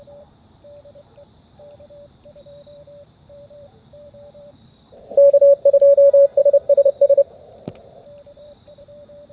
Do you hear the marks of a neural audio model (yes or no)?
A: yes